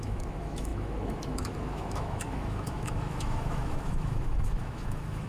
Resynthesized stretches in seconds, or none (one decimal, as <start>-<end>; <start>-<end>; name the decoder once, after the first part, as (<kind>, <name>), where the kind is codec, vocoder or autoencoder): 0.0-5.3 (autoencoder, DAC-VAE)